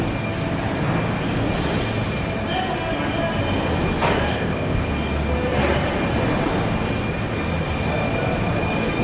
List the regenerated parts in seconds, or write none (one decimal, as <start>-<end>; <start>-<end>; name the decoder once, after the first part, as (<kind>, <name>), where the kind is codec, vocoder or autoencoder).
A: 4.3-4.9 (codec, ZipCodec)